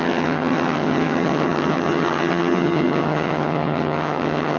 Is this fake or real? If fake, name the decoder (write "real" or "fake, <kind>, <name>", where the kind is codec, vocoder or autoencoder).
fake, vocoder, HiFi-GAN